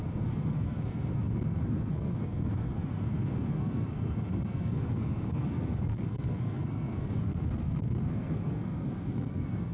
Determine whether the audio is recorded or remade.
remade